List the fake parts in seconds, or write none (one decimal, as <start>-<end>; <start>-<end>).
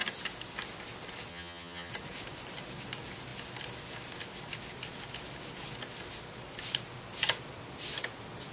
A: 1.3-1.9